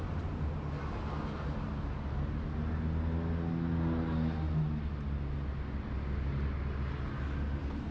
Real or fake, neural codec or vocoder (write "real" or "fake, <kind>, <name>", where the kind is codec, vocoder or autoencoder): real